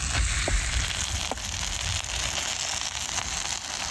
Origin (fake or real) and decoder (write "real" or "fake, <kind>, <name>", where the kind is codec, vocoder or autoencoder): real